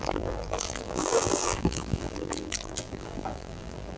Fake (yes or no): yes